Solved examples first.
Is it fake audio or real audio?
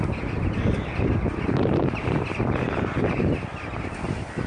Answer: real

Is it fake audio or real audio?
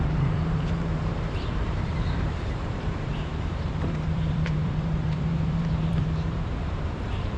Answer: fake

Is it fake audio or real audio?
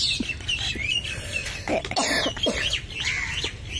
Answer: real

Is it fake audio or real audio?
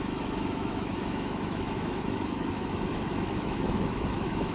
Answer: fake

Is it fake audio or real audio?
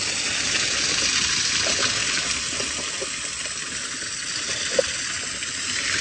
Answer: real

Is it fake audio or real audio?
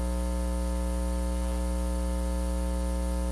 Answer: real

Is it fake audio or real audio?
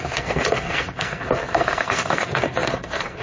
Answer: fake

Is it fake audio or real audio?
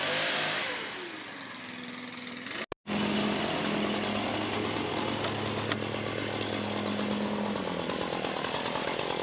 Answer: real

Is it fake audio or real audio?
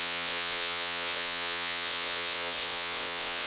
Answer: fake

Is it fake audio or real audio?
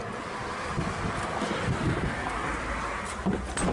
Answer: real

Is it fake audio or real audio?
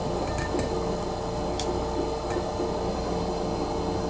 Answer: real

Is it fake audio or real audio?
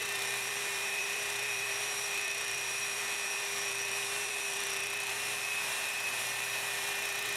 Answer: fake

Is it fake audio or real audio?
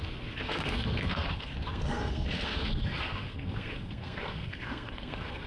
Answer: fake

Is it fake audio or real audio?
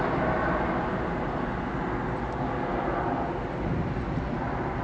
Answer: real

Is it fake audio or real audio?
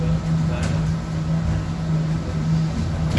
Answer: real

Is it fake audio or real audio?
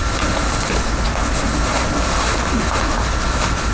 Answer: real